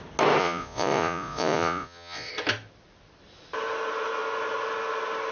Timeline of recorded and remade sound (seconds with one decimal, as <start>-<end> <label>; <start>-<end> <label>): 0.0-0.4 recorded; 0.4-2.3 remade; 2.3-5.3 recorded